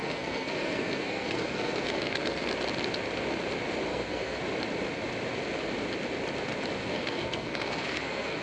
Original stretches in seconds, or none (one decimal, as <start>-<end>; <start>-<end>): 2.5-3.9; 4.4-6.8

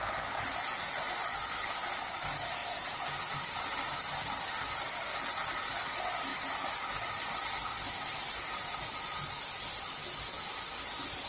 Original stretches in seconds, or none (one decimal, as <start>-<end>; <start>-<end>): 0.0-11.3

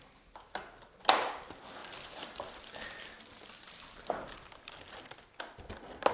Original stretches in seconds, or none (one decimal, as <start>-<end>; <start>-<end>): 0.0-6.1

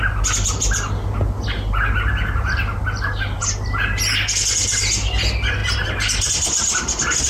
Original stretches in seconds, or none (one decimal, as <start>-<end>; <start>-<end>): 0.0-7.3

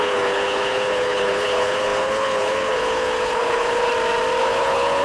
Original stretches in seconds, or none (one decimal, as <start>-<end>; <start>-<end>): 3.9-4.4